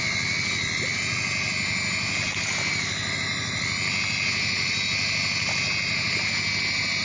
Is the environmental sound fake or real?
real